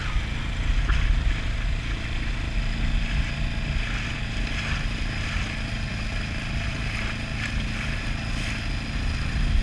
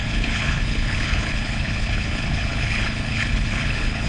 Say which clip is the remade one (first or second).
second